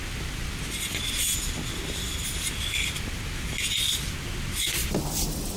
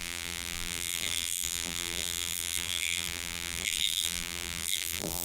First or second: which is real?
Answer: first